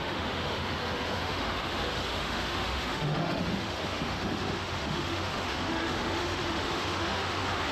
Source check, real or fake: fake